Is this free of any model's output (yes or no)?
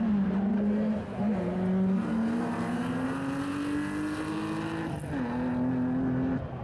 yes